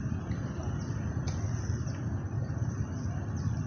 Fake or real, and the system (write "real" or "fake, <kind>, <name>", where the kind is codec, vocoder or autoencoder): real